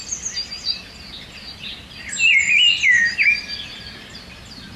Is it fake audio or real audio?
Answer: real